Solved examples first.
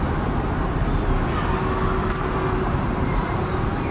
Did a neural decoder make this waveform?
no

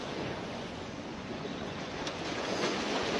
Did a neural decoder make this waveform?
yes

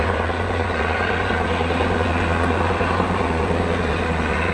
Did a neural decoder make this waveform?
yes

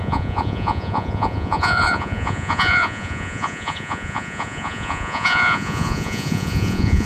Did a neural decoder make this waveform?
yes